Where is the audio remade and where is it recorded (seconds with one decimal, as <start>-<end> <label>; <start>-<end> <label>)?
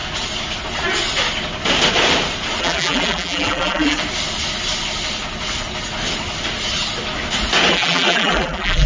0.0-2.6 recorded; 2.6-4.0 remade; 4.0-7.7 recorded; 7.7-8.9 remade